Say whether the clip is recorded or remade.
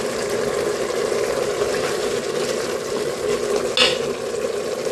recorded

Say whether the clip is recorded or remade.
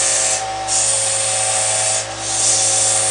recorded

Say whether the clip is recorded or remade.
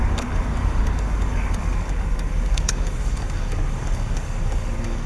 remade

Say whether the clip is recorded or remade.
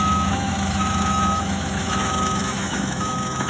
remade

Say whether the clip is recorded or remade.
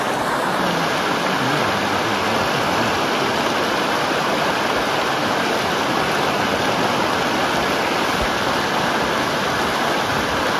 recorded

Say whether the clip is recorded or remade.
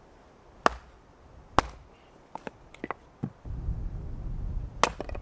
recorded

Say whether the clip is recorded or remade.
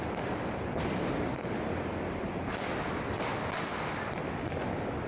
recorded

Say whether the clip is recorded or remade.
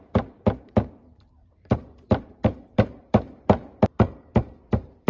remade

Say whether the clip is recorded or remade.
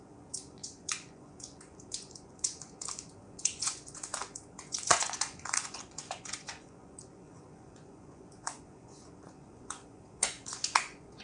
remade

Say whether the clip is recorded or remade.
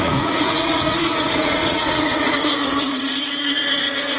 remade